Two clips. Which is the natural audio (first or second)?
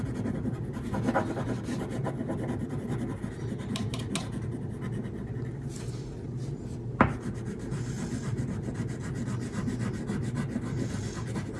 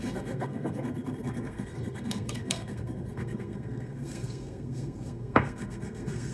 first